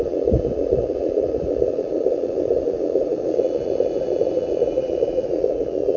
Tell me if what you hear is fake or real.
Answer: fake